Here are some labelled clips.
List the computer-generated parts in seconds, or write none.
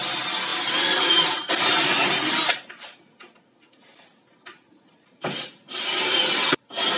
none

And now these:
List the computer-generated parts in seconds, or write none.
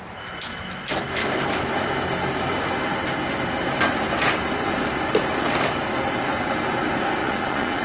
7.2-7.8 (vocoder, Vocos)